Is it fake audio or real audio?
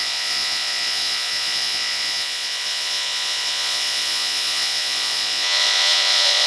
fake